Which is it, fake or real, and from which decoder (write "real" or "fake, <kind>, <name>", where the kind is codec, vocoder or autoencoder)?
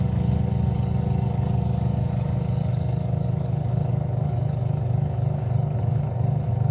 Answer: fake, codec, DAC